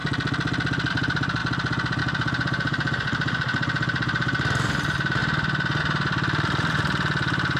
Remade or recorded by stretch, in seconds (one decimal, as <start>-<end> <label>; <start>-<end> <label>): 0.0-0.9 recorded; 0.9-1.4 remade; 1.4-2.0 recorded; 2.0-5.2 remade; 5.2-5.8 recorded; 5.8-7.6 remade